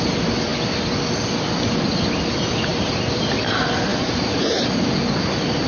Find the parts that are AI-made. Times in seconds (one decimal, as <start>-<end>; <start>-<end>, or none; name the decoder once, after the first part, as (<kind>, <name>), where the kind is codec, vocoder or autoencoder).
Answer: 2.7-3.5 (vocoder, BigVGAN v2); 3.9-4.6